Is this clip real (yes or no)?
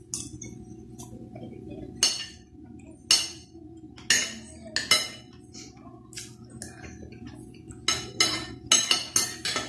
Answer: yes